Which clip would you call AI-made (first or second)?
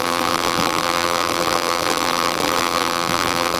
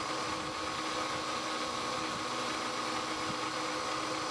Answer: first